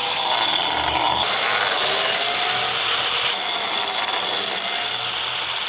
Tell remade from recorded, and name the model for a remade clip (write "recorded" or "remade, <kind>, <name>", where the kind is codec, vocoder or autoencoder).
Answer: recorded